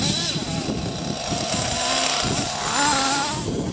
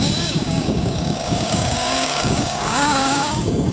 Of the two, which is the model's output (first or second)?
second